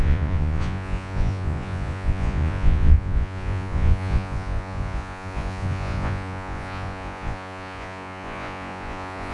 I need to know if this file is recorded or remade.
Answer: remade